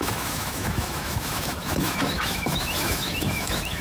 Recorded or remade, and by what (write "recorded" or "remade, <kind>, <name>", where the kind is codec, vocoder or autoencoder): remade, autoencoder, DAC-VAE